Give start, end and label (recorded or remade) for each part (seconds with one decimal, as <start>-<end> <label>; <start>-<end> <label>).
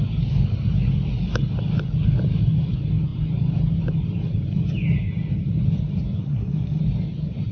0.0-6.2 recorded; 6.2-6.8 remade; 6.8-7.5 recorded